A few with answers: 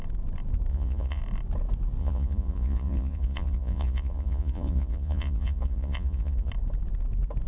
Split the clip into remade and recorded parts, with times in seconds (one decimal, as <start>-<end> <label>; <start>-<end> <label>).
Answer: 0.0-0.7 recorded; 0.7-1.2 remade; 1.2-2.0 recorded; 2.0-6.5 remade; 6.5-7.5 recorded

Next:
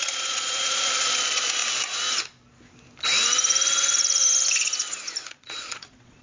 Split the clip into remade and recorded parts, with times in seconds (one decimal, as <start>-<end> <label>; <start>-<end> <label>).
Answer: 0.0-1.6 remade; 1.6-5.3 recorded; 5.3-6.2 remade

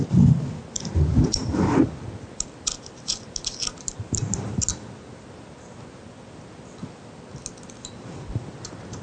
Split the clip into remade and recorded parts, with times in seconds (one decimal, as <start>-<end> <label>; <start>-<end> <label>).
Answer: 0.0-9.0 recorded